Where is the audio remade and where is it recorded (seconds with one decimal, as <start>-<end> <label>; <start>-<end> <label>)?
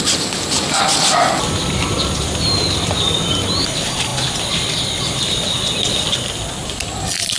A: 0.0-6.6 recorded; 6.6-7.4 remade